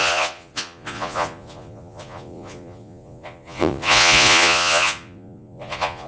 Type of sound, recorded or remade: remade